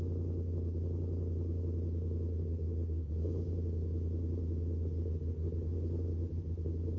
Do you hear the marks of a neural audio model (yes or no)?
no